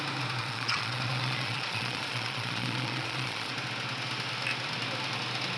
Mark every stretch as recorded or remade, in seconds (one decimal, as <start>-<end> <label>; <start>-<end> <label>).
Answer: 0.0-0.4 recorded; 0.4-3.5 remade; 3.5-5.6 recorded